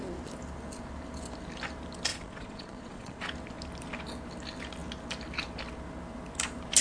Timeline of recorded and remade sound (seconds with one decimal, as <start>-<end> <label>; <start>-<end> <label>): 0.0-2.1 recorded; 2.1-3.3 remade; 3.3-6.8 recorded